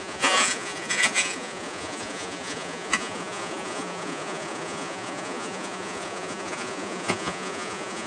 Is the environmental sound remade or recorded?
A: remade